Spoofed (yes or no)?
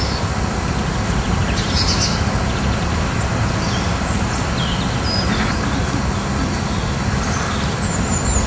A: no